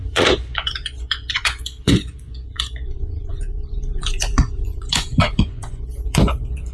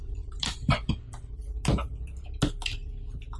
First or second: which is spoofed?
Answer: first